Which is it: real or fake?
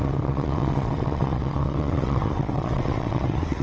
fake